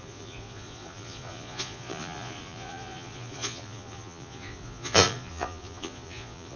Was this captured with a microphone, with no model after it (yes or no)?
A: no